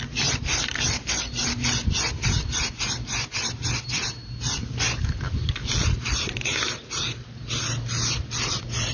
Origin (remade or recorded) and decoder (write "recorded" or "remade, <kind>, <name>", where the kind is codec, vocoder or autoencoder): recorded